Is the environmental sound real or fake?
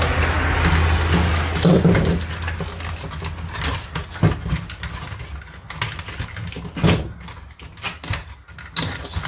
real